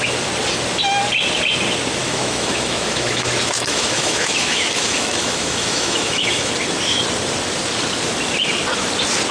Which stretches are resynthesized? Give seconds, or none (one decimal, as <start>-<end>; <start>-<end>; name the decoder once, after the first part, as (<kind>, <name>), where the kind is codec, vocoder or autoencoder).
2.0-6.5 (autoencoder, DAC-VAE)